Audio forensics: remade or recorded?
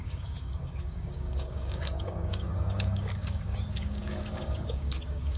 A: remade